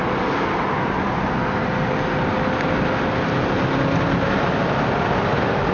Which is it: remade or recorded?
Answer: recorded